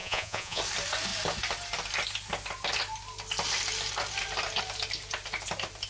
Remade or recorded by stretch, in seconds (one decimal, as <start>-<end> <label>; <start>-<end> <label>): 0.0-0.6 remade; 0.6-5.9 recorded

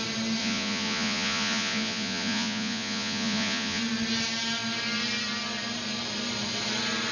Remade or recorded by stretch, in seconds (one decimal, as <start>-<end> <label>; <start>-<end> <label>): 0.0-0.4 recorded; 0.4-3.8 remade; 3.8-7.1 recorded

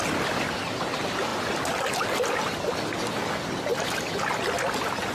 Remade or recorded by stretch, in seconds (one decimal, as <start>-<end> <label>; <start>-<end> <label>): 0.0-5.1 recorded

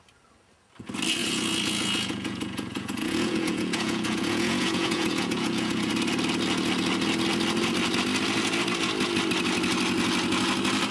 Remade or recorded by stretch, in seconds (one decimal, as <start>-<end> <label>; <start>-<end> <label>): 0.0-1.2 recorded; 1.2-5.9 remade; 5.9-10.9 recorded

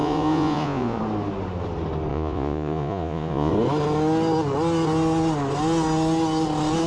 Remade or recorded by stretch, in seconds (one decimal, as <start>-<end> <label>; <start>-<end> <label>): 0.0-1.0 remade; 1.0-2.1 recorded; 2.1-3.5 remade; 3.5-6.9 recorded

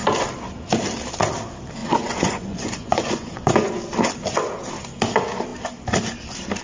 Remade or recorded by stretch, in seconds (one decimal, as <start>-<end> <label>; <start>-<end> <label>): 0.0-1.8 recorded; 1.8-3.7 remade; 3.7-6.6 recorded